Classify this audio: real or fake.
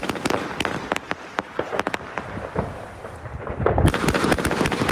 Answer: real